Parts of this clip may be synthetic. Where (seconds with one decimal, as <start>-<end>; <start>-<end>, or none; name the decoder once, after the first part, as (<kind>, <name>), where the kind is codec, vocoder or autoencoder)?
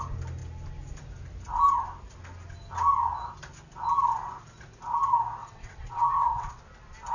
5.4-6.6 (vocoder, WaveNeXt)